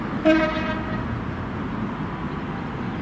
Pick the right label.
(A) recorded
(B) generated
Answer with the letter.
A